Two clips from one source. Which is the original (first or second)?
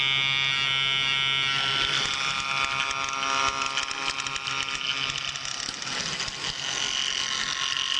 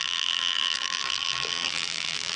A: first